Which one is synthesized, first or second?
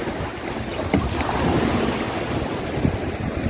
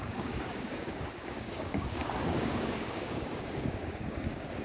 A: second